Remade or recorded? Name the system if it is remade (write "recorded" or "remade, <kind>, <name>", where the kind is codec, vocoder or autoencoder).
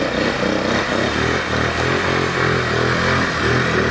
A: recorded